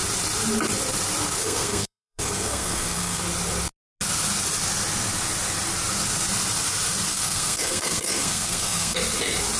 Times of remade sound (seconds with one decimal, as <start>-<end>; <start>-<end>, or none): 1.4-3.2; 7.1-9.0